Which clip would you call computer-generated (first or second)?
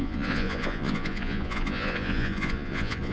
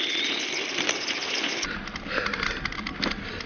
first